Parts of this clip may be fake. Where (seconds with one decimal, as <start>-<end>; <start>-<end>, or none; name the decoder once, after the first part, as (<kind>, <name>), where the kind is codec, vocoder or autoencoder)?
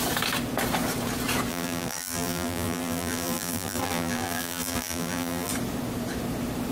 1.5-5.5 (vocoder, BigVGAN v2)